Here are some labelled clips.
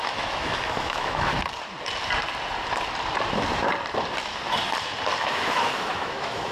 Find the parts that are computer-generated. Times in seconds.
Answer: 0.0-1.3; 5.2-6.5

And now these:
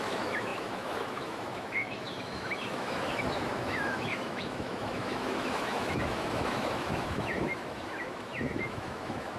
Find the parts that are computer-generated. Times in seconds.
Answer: 0.0-9.4

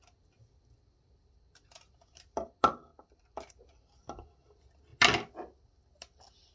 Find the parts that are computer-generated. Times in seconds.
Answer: none

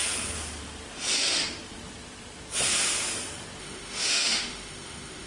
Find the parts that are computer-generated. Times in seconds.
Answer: 3.6-5.3

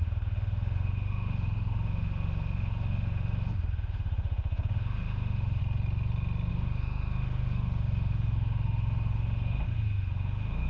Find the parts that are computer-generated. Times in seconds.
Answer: 0.0-5.6; 6.5-10.7

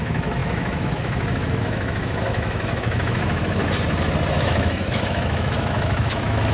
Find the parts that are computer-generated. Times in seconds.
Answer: 0.0-3.6; 4.3-6.5